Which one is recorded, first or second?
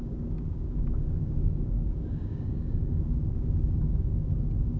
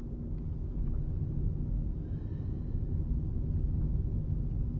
second